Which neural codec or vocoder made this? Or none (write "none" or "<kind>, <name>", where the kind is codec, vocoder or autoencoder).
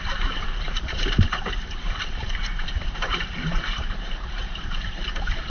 vocoder, BigVGAN v2